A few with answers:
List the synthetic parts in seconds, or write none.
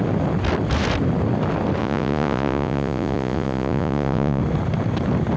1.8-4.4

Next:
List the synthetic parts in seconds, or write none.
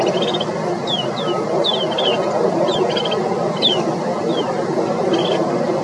none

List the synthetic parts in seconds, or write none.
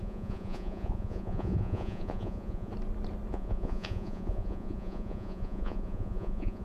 0.0-2.7; 3.3-6.6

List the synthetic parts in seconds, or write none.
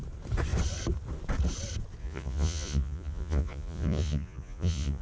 2.0-5.0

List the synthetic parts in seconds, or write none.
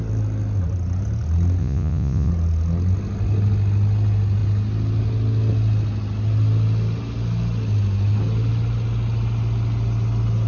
1.6-2.3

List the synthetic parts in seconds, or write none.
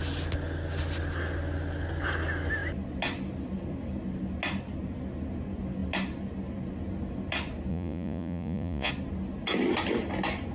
7.7-8.9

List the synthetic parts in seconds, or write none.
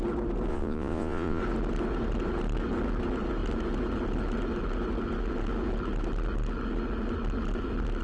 0.5-1.4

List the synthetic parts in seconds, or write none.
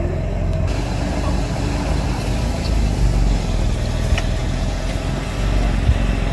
4.4-4.9